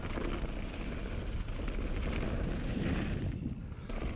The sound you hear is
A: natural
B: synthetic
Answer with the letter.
A